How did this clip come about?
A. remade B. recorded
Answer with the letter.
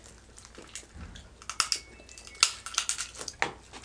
B